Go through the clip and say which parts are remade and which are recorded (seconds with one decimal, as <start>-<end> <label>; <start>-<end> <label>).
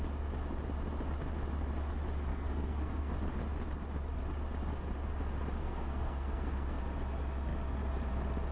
0.0-2.3 recorded; 2.3-3.1 remade; 3.1-5.6 recorded; 5.6-6.8 remade; 6.8-8.5 recorded